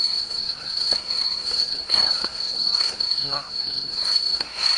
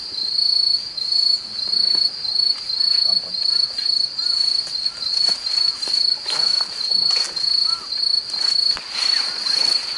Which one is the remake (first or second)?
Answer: first